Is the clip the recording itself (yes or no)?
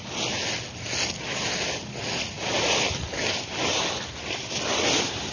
yes